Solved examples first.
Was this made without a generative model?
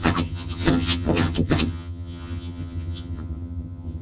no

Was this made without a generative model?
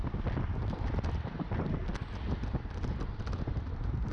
yes